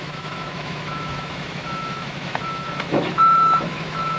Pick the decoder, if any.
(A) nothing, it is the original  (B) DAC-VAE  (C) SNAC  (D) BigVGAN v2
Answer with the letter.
B